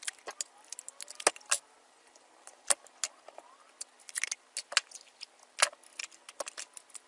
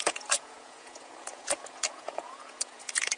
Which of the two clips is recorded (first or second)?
first